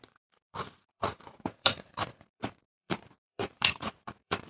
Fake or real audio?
fake